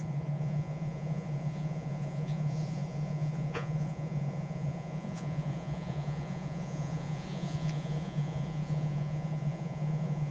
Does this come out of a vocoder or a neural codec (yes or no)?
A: yes